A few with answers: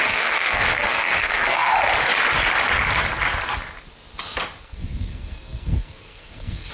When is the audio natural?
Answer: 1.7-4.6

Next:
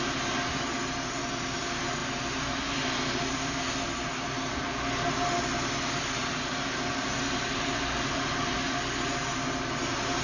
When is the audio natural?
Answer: 0.0-10.2

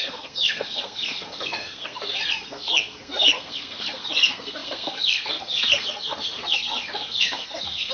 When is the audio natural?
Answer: none

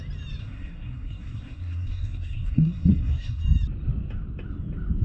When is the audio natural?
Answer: 0.0-0.4; 3.4-5.0

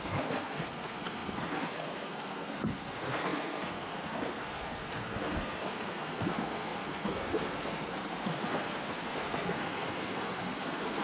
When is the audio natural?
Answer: none

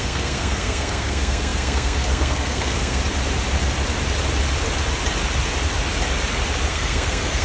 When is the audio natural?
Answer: 3.0-6.7

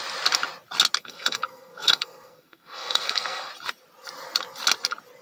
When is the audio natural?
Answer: 0.0-1.0; 3.5-5.2